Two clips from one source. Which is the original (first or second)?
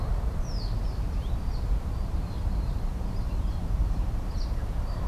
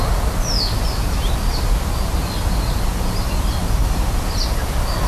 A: second